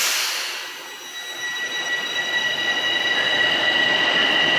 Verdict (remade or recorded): recorded